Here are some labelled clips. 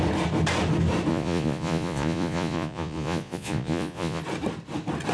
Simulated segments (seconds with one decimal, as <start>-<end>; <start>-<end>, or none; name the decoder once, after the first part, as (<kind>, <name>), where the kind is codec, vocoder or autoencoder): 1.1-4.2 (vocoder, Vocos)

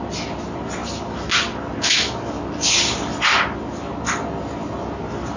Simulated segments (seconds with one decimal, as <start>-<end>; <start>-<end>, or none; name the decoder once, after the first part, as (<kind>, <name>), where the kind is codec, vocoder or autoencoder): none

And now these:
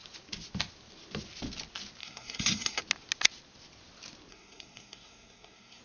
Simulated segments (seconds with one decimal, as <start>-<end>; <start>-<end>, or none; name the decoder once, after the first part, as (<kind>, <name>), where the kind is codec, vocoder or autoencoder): 2.0-2.8 (codec, SNAC); 4.3-5.8

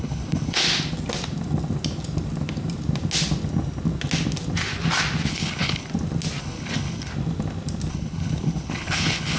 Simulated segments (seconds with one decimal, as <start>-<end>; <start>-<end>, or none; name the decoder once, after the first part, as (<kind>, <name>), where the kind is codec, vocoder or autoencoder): 0.0-0.6 (codec, HILCodec); 5.3-5.9; 6.4-7.1; 7.9-9.4

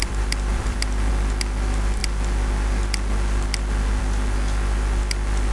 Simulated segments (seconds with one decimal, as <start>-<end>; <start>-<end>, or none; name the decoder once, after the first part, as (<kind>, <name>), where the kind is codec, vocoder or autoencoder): 0.0-1.1 (vocoder, BigVGAN v2)

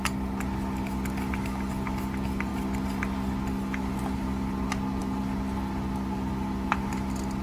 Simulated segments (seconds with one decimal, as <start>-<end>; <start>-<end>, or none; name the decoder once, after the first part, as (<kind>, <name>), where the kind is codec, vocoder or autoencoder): none

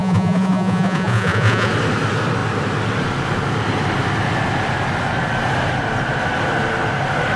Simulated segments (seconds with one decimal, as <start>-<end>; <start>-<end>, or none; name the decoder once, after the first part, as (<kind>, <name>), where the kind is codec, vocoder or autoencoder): 0.0-1.7 (vocoder, Vocos)

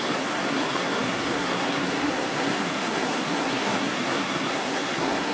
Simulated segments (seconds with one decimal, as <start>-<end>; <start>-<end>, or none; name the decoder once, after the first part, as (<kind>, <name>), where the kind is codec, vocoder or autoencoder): 0.0-5.3 (codec, SNAC)